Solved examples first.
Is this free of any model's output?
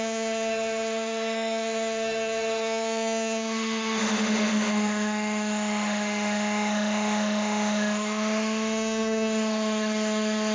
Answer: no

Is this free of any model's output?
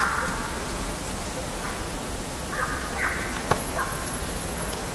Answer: yes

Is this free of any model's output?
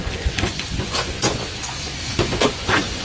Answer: no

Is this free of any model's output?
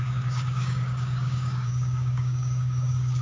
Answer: no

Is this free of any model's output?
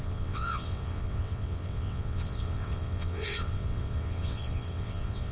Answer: no